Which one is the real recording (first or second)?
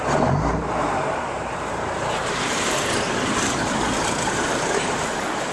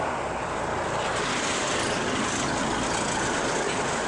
second